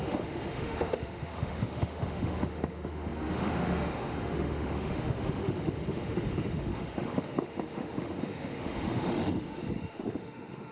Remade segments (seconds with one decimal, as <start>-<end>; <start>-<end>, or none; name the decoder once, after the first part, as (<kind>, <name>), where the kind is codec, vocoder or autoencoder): 0.0-10.7 (autoencoder, DAC-VAE)